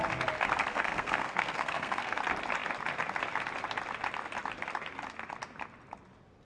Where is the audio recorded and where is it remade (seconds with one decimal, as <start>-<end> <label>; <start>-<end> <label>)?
0.0-0.7 recorded; 0.7-2.2 remade; 2.2-6.4 recorded